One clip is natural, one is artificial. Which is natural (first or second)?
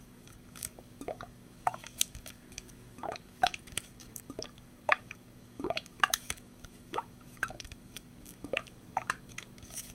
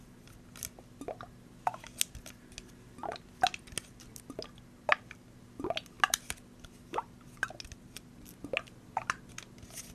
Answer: second